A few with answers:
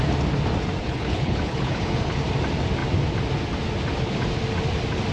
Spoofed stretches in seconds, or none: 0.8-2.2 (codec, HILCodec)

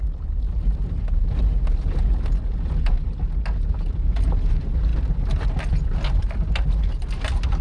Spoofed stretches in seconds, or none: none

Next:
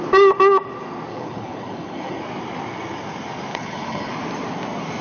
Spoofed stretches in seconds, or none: 1.1-2.2 (codec, HILCodec); 3.5-4.1

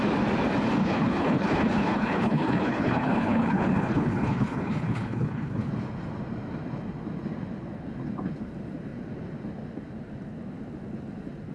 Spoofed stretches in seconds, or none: 0.8-5.7 (codec, HILCodec)

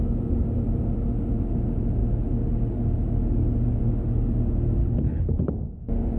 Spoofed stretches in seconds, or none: 4.8-5.5 (codec, HILCodec)

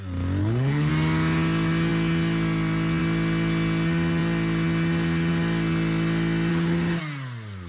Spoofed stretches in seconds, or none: 0.4-0.9 (codec, HILCodec); 6.5-7.0

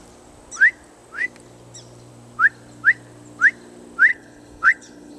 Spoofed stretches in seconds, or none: 4.1-5.2 (codec, HILCodec)

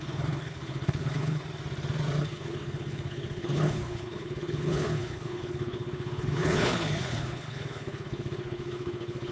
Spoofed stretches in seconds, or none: 0.0-1.4 (codec, HILCodec); 2.2-9.3